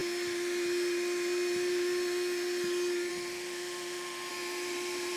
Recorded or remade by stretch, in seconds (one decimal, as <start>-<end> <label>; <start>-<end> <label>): 0.0-3.1 recorded; 3.1-4.3 remade; 4.3-5.2 recorded